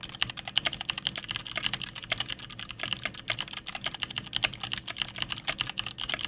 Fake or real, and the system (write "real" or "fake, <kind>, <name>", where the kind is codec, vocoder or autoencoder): real